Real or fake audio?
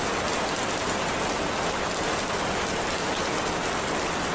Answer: real